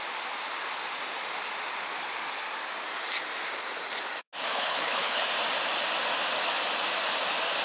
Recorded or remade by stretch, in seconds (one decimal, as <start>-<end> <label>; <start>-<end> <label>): 0.0-4.5 recorded; 4.5-5.2 remade; 5.2-7.6 recorded